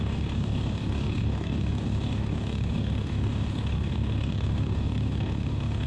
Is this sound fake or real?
fake